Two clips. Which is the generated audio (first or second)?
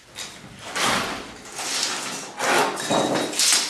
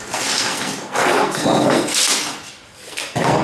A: second